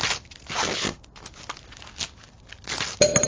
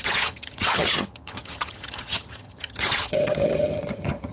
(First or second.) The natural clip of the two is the first